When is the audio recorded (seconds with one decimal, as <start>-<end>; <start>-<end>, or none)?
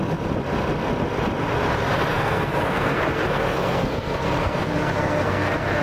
0.0-2.1